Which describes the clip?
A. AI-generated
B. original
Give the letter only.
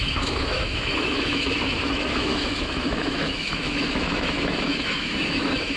A